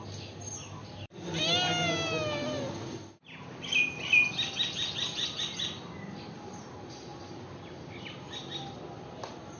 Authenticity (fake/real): real